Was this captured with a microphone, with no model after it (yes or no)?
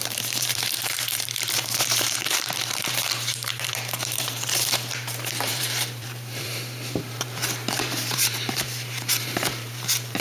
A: no